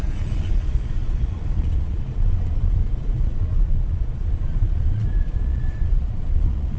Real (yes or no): no